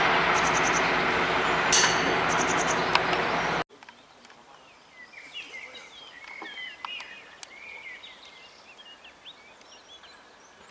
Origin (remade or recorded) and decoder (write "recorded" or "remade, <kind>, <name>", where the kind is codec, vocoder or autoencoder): recorded